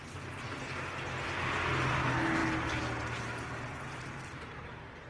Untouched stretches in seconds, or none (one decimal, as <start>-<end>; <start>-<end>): 0.0-5.1

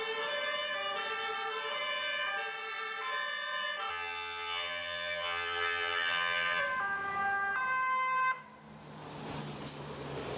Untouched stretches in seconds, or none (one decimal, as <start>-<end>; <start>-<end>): 0.0-3.9; 6.6-10.4

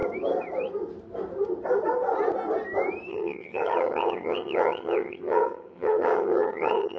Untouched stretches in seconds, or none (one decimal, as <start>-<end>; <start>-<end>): 0.0-3.1

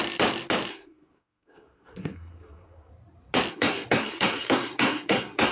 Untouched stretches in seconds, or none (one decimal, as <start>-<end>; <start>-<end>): 0.0-0.7; 2.9-3.5

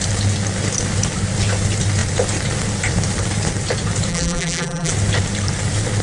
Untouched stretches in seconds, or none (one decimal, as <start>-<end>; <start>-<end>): 0.0-4.1; 4.9-6.0

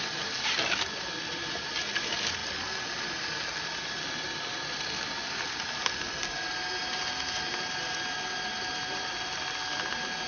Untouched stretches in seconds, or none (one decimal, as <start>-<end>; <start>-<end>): 0.0-10.3